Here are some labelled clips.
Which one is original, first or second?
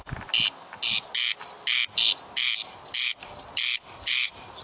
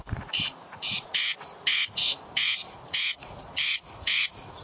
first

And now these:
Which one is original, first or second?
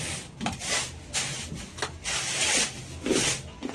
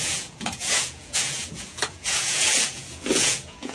first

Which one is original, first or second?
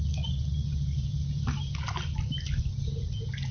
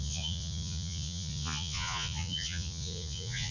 first